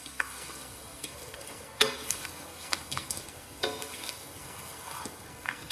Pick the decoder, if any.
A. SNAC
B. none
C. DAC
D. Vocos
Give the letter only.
A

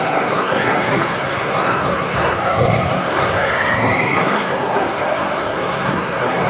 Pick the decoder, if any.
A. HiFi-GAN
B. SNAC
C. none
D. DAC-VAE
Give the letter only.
B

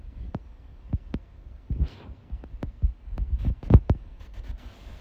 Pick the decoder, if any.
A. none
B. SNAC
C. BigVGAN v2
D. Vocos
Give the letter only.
B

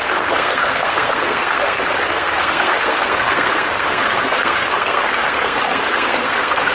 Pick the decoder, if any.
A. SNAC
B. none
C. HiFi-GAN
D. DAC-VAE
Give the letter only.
A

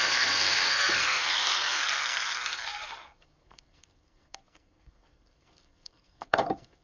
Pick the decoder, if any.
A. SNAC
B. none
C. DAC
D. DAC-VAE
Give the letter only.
A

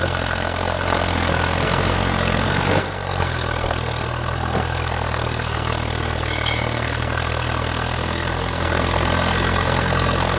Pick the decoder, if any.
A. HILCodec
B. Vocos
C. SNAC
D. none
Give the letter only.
C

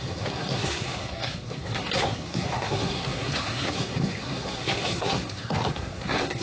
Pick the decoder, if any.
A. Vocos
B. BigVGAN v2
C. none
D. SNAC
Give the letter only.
D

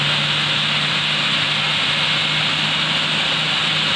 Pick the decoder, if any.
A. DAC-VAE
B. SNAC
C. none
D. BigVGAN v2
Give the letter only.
C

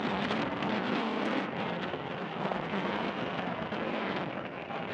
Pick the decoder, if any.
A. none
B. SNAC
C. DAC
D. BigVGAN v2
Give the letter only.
B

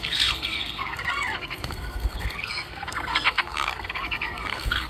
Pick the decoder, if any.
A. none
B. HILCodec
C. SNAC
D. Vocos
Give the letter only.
C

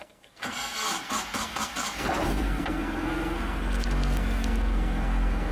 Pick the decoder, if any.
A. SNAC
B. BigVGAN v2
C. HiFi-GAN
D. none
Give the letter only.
A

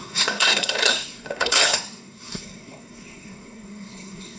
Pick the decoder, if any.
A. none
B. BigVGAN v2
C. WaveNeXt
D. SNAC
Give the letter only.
D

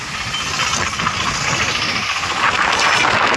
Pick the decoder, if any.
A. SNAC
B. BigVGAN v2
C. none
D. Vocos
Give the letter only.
C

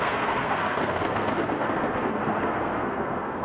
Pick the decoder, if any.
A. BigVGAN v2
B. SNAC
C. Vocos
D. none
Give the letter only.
B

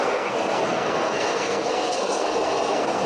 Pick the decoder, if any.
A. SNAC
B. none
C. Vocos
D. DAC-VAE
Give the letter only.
A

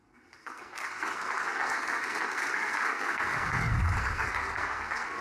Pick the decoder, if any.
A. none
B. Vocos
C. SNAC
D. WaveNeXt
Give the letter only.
C